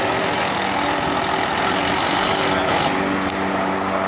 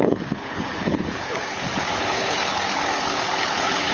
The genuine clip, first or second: first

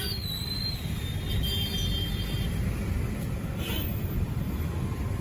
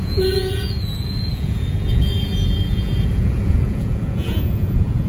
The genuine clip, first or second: first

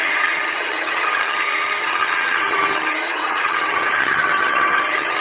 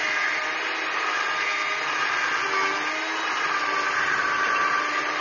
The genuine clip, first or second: second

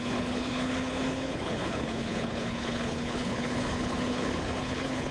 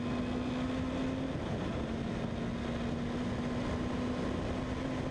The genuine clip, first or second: second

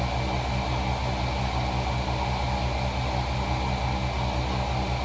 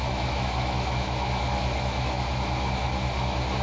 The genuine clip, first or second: first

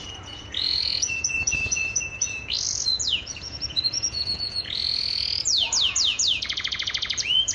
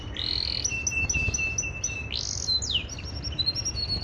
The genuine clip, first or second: second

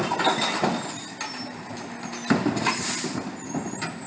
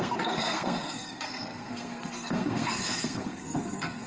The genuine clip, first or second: first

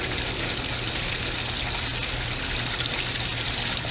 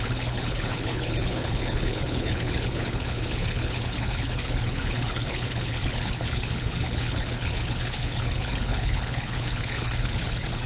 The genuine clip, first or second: first